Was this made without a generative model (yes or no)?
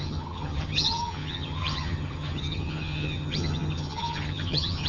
no